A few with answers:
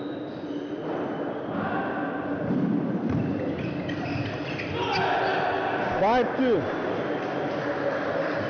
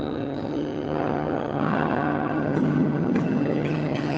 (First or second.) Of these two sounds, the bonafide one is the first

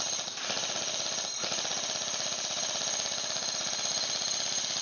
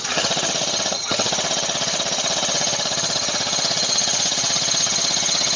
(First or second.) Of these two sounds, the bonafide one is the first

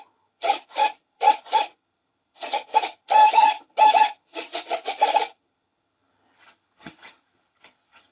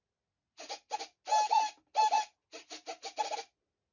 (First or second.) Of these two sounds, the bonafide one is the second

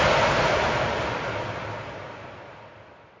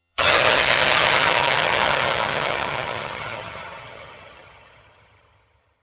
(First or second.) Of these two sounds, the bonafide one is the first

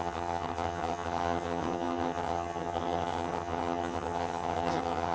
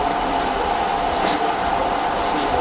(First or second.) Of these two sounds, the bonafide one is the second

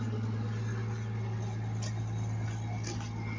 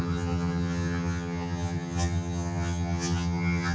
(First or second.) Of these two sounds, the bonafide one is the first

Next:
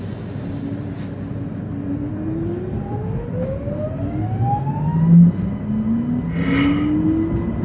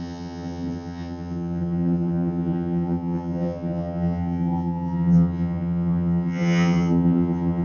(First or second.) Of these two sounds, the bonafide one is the first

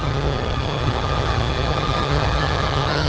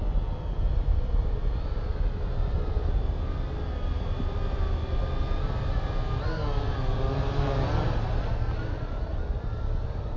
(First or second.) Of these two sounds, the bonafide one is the second